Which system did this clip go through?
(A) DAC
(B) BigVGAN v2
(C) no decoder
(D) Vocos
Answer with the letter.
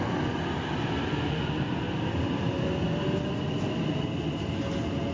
C